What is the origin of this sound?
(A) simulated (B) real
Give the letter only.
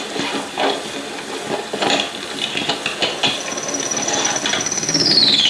B